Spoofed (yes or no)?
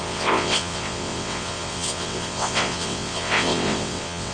yes